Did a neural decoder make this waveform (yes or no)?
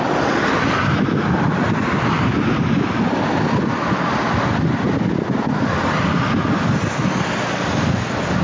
no